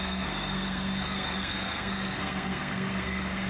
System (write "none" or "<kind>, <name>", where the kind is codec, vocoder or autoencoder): codec, SNAC